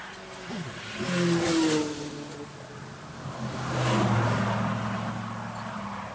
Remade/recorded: recorded